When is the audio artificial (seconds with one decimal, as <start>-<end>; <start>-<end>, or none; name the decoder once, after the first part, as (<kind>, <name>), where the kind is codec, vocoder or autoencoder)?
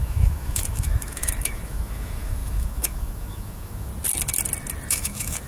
0.0-3.9 (autoencoder, DAC-VAE); 4.9-5.5